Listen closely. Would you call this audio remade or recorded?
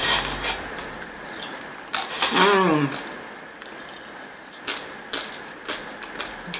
recorded